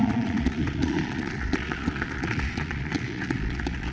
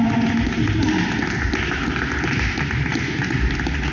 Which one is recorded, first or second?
second